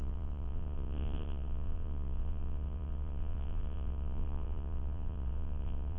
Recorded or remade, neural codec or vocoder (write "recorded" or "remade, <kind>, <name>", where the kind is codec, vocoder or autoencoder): remade, vocoder, WaveNeXt